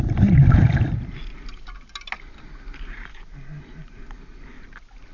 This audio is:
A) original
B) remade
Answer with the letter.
A